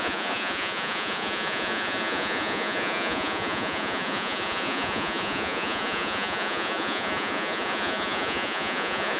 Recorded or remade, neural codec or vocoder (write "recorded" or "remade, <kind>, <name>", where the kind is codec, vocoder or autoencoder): remade, vocoder, Vocos